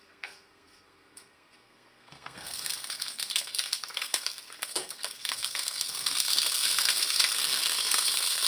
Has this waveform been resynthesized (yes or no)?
yes